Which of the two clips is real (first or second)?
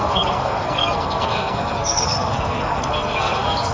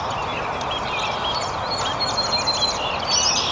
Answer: second